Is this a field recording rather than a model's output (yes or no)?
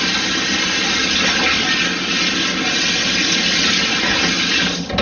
yes